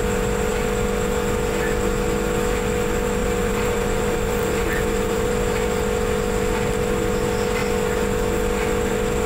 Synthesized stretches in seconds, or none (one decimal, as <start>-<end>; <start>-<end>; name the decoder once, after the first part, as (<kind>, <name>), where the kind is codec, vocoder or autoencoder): 3.2-5.3 (vocoder, BigVGAN v2)